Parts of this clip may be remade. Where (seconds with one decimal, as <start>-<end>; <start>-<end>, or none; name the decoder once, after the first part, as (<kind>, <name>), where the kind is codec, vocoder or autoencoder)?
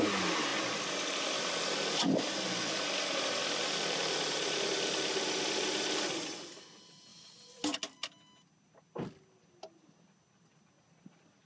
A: none